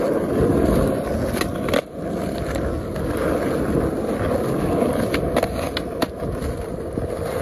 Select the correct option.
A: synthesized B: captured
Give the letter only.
B